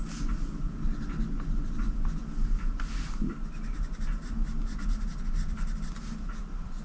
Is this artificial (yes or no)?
no